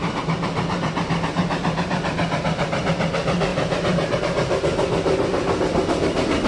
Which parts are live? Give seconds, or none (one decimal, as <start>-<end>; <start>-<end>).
0.0-6.5